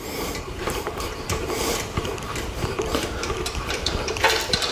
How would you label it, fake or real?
fake